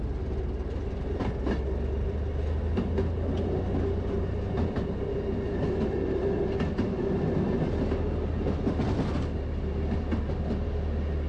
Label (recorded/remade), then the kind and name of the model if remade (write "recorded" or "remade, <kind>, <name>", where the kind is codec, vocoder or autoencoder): recorded